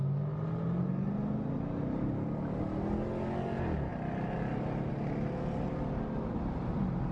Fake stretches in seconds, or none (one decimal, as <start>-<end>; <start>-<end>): none

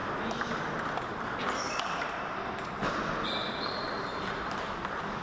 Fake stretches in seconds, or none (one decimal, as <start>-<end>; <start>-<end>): none

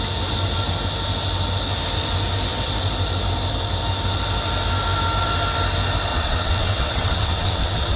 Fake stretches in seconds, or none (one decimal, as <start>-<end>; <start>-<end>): 6.1-8.0

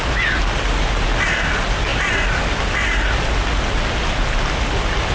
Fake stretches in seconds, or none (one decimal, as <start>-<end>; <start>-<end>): none

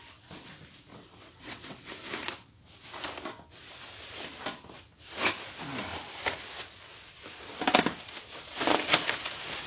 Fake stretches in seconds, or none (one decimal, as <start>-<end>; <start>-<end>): 0.9-1.9

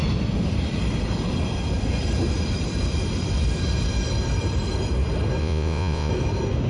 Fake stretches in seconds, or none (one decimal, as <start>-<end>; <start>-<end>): 5.4-6.1

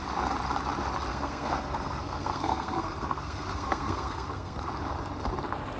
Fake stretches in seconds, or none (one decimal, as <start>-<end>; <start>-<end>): 1.1-4.6

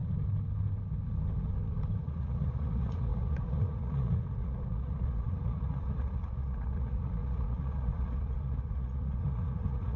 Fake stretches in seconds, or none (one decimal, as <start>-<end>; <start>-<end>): 2.0-10.0